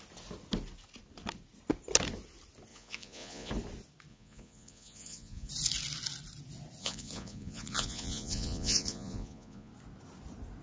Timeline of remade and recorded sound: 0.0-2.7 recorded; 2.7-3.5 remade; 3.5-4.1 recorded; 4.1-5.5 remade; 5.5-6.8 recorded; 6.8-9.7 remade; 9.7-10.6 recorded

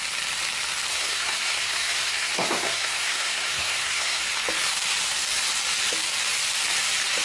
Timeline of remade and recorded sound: 0.0-0.9 recorded; 0.9-4.2 remade; 4.2-7.2 recorded

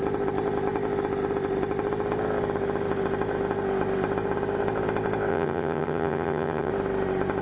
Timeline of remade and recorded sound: 0.0-5.3 recorded; 5.3-6.7 remade; 6.7-7.4 recorded

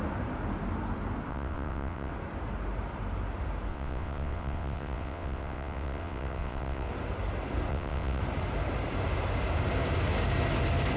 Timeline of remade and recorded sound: 0.0-1.3 recorded; 1.3-2.1 remade; 2.1-3.7 recorded; 3.7-6.9 remade; 6.9-7.7 recorded; 7.7-8.2 remade; 8.2-11.0 recorded

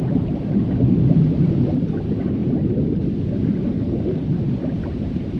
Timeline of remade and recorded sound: 0.0-3.7 recorded; 3.7-4.2 remade; 4.2-5.4 recorded

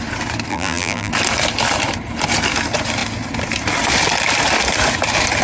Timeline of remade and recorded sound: 0.0-0.5 recorded; 0.5-1.1 remade; 1.1-5.4 recorded

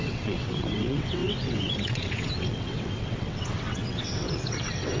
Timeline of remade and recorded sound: 0.0-5.0 remade

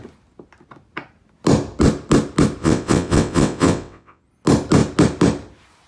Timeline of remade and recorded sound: 0.0-2.6 recorded; 2.6-4.2 remade; 4.2-5.9 recorded